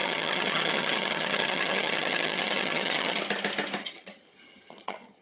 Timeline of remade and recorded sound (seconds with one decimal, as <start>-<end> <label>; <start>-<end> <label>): 0.0-3.2 remade; 3.2-3.8 recorded; 3.8-5.2 remade